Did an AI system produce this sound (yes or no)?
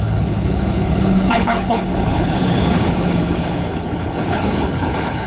yes